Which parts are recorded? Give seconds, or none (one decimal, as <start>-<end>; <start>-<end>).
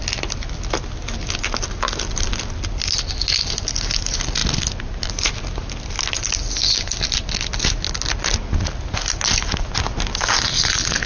0.0-11.1